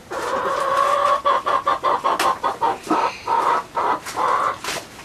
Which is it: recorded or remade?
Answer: recorded